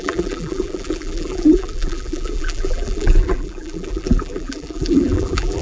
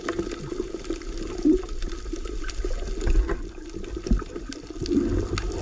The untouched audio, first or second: second